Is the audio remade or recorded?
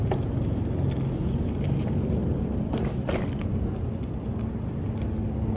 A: recorded